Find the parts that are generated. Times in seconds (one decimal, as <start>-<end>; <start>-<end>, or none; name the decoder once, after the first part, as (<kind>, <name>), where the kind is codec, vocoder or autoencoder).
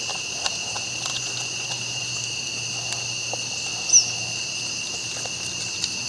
1.1-2.1 (vocoder, Vocos)